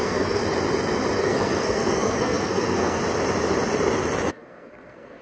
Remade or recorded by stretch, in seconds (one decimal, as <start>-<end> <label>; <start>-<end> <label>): 0.0-0.4 remade; 0.4-1.2 recorded; 1.2-3.0 remade; 3.0-4.3 recorded; 4.3-5.2 remade